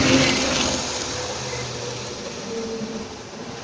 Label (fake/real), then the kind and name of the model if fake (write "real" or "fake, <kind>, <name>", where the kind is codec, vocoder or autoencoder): real